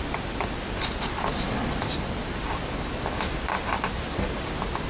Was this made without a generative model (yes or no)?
yes